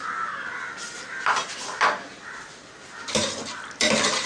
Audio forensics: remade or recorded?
recorded